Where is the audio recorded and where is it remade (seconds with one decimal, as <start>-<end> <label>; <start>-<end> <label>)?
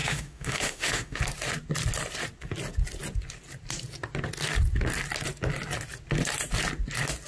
0.0-1.2 remade; 1.2-7.3 recorded